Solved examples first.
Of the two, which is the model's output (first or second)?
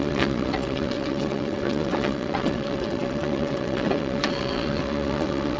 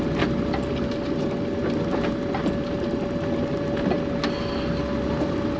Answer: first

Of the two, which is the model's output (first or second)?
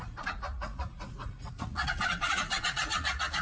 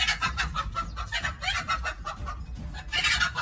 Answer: first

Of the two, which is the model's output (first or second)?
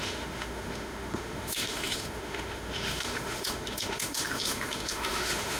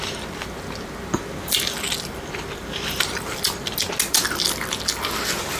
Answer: first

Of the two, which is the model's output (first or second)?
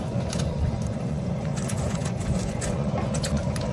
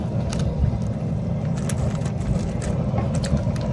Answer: first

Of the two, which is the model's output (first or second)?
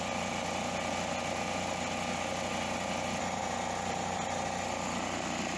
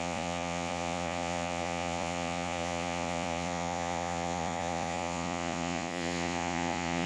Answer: second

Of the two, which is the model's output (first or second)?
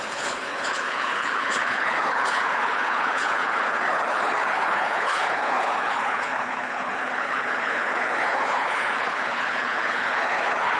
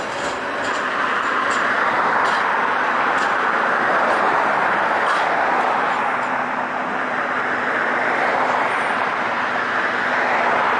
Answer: first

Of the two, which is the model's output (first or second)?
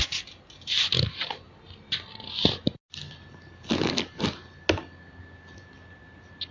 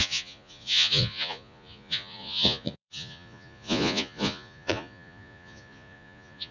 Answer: second